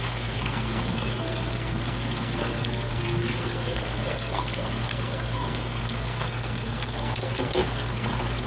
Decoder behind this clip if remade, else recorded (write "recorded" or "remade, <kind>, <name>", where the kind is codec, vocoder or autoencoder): remade, codec, SNAC